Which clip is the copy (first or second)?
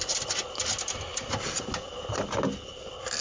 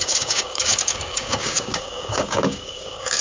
second